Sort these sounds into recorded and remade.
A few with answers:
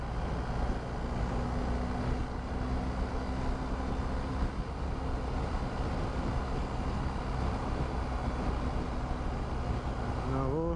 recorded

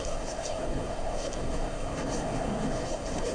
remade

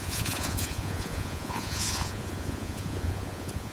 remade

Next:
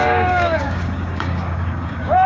remade